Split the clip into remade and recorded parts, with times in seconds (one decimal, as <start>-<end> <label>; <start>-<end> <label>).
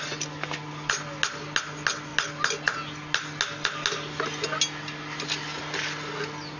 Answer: 0.0-6.6 recorded